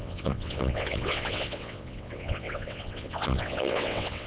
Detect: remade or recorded remade